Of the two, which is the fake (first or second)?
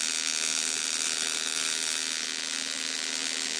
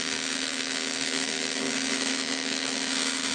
second